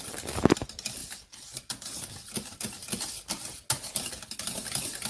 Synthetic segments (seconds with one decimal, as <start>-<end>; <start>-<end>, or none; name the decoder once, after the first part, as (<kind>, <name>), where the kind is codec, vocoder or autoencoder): none